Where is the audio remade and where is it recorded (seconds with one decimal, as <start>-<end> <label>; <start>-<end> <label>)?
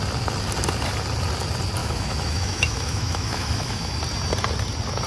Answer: 0.0-1.8 recorded; 1.8-4.0 remade; 4.0-5.1 recorded